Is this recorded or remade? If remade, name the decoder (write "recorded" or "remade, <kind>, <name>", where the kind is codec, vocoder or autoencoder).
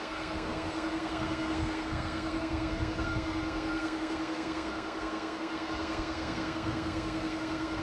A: remade, codec, SNAC